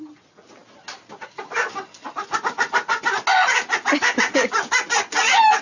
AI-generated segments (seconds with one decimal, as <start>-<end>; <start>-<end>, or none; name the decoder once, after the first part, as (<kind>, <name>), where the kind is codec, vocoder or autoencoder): none